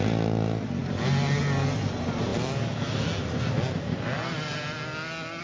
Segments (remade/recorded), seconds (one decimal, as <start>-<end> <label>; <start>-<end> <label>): 0.0-5.4 recorded